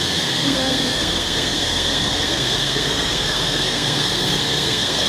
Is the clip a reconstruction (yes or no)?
yes